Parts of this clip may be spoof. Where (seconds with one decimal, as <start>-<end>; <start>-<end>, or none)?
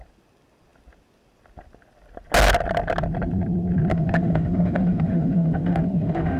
3.9-6.4